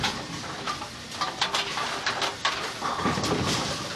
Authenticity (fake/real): real